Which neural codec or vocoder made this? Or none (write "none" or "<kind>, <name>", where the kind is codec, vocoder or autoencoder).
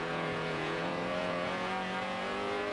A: vocoder, Vocos